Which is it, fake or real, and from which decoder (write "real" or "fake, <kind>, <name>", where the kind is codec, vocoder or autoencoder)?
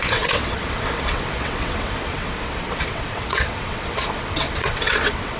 fake, vocoder, WaveNeXt